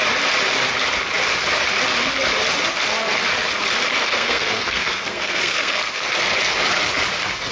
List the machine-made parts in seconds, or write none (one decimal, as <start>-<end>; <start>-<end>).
4.0-6.1